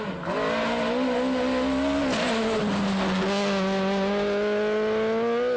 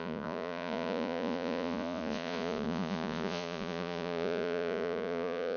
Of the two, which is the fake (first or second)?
second